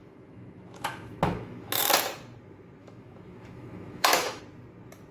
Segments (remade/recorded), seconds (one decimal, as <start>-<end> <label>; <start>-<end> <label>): 0.0-1.8 remade; 1.8-2.8 recorded; 2.8-4.4 remade; 4.4-5.1 recorded